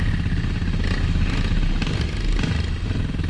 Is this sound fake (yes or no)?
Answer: no